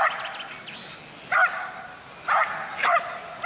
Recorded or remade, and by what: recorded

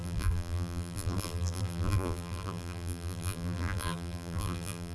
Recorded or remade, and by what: remade, vocoder, BigVGAN v2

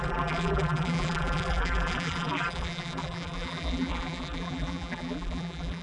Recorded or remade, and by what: remade, vocoder, BigVGAN v2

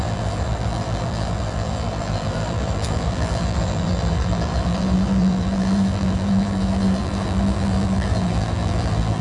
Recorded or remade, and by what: remade, vocoder, BigVGAN v2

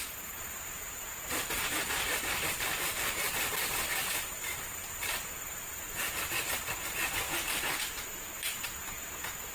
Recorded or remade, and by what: remade, vocoder, BigVGAN v2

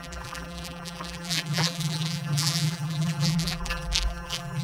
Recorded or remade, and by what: remade, vocoder, BigVGAN v2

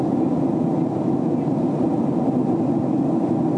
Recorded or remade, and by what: recorded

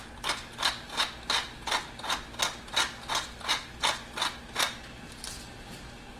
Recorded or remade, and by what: recorded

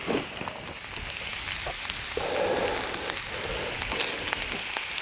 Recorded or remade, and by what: recorded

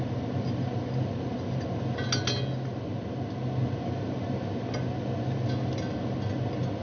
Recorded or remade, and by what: recorded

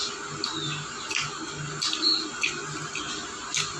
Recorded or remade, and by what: recorded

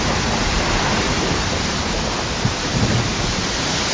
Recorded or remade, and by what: remade, vocoder, BigVGAN v2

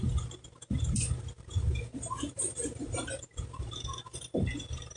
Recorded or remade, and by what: remade, vocoder, BigVGAN v2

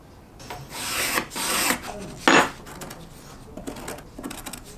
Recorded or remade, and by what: recorded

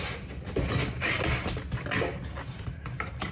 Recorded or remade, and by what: recorded